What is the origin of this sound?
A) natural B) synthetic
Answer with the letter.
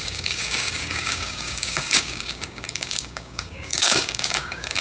B